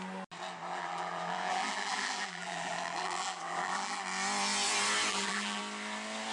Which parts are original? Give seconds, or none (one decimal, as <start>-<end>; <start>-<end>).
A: 0.0-0.7; 4.0-5.1; 5.6-6.3